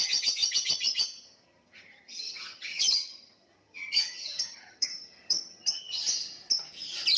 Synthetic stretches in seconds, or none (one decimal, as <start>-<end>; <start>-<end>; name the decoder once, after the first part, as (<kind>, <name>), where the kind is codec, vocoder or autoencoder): 0.0-6.0 (vocoder, HiFi-GAN)